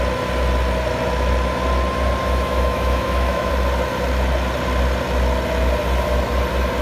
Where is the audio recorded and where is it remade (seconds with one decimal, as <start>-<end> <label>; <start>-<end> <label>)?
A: 0.0-2.2 recorded; 2.2-3.5 remade; 3.5-6.8 recorded